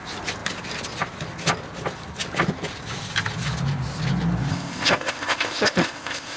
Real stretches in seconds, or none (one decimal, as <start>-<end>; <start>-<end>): 0.0-4.5